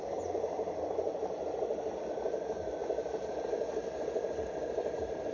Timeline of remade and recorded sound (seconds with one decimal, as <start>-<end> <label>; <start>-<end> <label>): 0.0-5.3 recorded